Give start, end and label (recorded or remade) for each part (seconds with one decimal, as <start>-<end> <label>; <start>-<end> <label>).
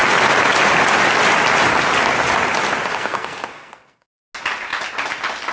0.0-2.9 recorded; 2.9-4.2 remade; 4.2-5.5 recorded